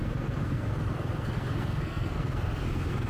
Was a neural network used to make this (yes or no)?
yes